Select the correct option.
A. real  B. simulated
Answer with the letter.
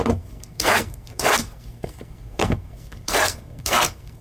B